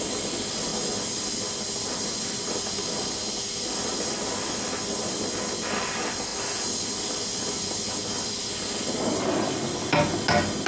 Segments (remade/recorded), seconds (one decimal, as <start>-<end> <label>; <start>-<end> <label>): 0.0-10.7 recorded